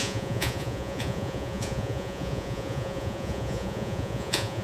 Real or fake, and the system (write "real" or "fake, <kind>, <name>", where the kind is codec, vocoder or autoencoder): fake, vocoder, Vocos